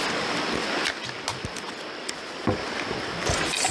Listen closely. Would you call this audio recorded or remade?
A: recorded